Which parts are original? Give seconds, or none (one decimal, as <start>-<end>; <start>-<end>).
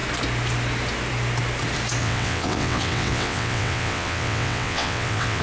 0.0-2.0